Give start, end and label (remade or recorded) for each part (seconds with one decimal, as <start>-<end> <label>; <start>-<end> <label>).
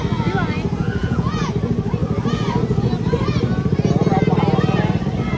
0.0-1.0 recorded; 1.0-1.5 remade; 1.5-5.4 recorded